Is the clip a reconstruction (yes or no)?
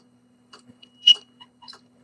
yes